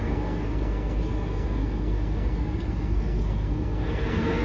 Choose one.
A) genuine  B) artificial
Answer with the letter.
B